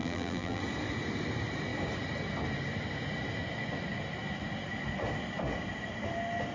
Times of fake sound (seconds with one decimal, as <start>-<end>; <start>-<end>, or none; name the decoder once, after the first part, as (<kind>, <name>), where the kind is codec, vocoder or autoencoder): 0.0-0.6 (vocoder, BigVGAN v2)